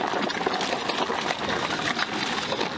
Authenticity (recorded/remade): recorded